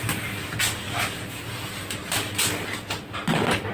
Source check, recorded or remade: recorded